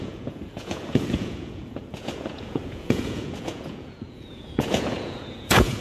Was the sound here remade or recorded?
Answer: remade